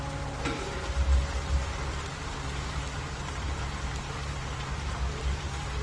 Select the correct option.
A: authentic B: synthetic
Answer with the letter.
B